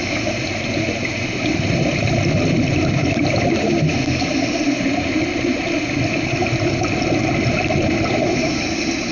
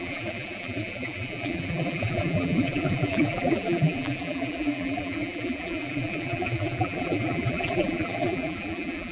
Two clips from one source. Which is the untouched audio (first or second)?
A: first